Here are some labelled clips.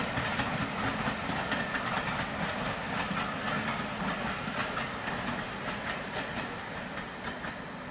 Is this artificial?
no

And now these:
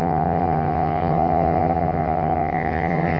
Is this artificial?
yes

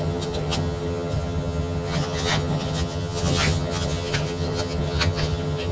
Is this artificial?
yes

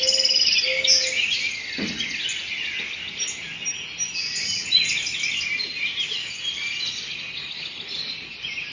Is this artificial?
no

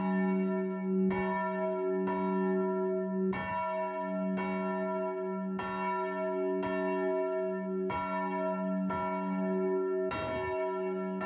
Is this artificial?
no